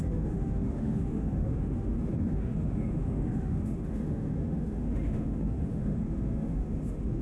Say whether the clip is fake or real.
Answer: fake